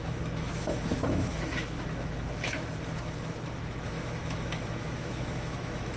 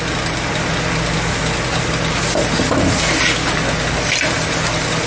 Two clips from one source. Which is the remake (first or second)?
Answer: first